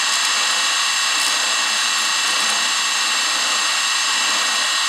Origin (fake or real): real